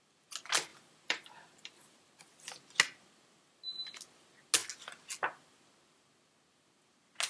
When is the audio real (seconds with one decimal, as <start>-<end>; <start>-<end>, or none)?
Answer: 0.0-0.7; 2.2-7.3